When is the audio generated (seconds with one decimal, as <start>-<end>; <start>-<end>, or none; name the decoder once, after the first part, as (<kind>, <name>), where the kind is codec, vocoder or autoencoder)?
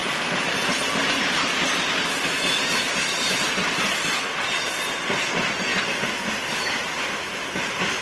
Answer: none